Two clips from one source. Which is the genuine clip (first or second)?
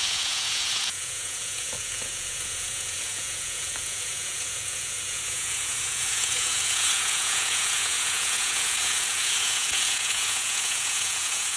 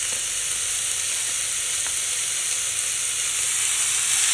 second